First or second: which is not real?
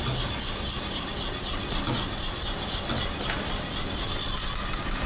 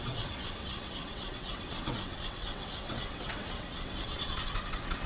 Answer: second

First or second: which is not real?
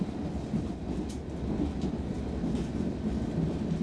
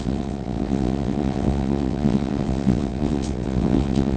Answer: second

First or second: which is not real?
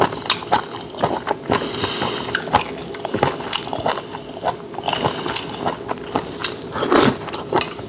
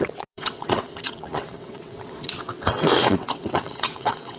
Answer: second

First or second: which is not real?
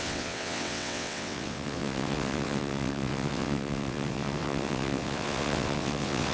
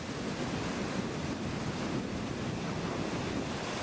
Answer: first